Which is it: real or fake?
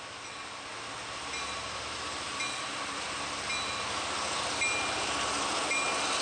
real